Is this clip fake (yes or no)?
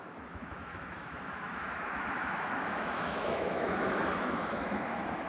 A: yes